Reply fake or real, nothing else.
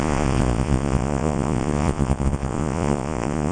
fake